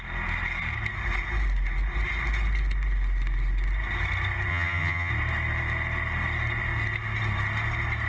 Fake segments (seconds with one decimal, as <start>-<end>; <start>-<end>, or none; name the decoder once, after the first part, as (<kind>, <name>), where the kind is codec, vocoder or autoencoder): 4.5-5.1 (vocoder, HiFi-GAN)